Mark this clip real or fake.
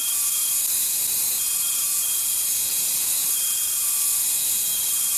real